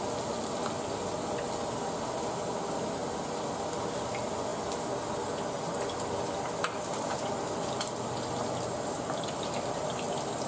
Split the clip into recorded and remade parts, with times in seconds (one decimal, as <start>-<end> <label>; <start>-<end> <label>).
0.0-10.5 recorded